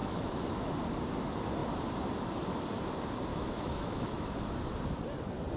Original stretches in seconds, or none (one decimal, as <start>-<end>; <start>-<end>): 0.7-3.3; 4.3-5.6